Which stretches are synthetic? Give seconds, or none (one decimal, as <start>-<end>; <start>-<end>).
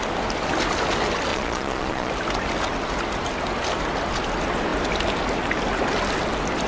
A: 1.3-2.1